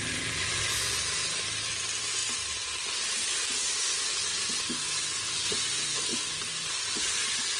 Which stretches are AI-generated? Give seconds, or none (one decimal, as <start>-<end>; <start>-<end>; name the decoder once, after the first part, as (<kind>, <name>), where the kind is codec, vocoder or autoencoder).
none